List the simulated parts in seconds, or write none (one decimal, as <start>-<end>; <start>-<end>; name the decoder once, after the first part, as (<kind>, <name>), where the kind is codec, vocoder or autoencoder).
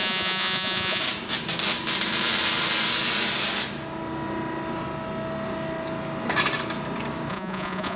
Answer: 0.0-1.0 (vocoder, Vocos); 7.3-8.0